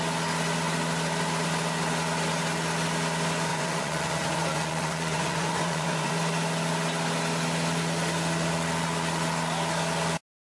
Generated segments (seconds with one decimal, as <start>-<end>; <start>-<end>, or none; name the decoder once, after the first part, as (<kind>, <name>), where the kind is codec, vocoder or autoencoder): 3.5-6.1 (vocoder, Vocos)